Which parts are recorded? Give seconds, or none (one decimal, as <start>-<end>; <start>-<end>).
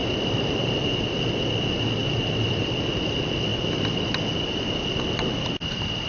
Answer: 1.2-2.0; 3.0-6.1